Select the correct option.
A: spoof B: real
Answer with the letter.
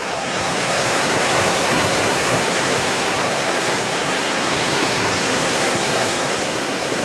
A